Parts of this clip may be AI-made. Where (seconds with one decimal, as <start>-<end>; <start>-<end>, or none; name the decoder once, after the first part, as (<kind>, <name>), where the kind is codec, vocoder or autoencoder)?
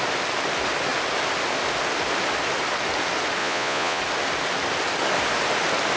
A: 3.4-4.0 (vocoder, Vocos)